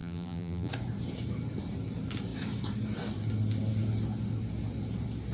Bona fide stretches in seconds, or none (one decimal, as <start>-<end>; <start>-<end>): 0.7-5.3